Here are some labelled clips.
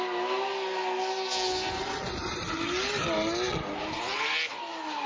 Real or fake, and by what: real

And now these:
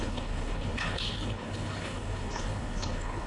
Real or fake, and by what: fake, codec, HILCodec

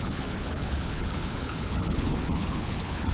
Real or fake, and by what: fake, codec, HILCodec